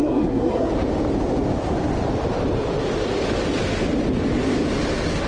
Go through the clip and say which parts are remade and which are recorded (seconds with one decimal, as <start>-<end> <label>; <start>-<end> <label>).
0.0-0.7 remade; 0.7-5.3 recorded